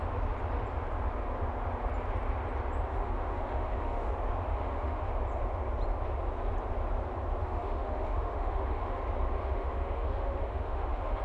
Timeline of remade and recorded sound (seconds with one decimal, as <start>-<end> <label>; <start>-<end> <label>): 0.0-2.9 recorded; 2.9-4.1 remade; 4.1-4.5 recorded; 4.5-5.1 remade; 5.1-7.4 recorded; 7.4-9.0 remade; 9.0-9.4 recorded; 9.4-11.2 remade